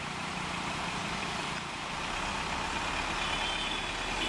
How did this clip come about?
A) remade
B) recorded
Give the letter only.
B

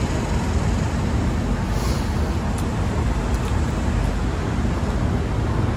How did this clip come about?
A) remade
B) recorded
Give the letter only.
B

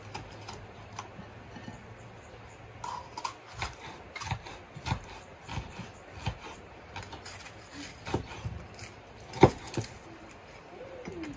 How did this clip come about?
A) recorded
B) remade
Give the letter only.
A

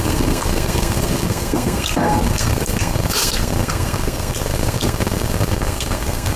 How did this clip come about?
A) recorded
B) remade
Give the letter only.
B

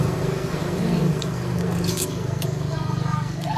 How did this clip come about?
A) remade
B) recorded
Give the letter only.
A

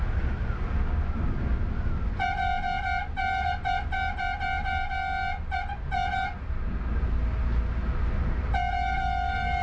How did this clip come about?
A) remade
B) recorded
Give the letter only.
B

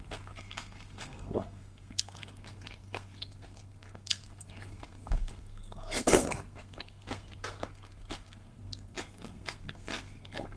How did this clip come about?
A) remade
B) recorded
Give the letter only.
A